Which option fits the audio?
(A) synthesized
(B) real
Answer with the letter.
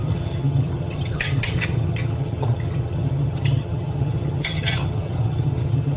A